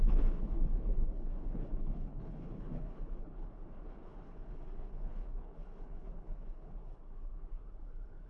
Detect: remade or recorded remade